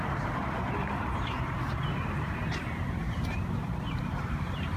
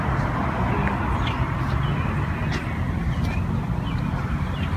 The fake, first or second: first